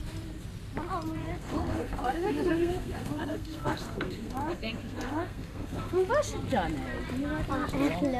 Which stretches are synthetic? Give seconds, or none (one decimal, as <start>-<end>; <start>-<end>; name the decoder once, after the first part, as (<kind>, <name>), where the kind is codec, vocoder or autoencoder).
1.2-6.1 (codec, SNAC)